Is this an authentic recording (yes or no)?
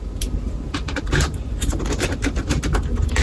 yes